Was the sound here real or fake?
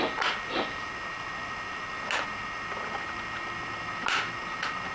real